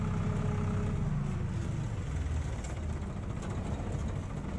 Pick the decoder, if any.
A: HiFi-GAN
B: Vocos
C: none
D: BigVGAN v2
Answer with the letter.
C